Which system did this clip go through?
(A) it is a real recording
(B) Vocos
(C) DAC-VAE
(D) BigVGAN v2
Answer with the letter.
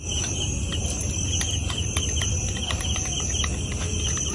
A